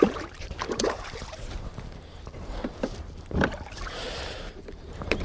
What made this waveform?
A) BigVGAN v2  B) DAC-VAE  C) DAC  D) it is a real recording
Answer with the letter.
A